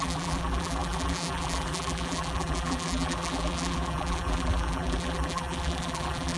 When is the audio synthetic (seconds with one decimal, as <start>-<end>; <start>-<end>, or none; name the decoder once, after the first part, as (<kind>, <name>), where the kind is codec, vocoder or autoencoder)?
0.0-6.4 (vocoder, BigVGAN v2)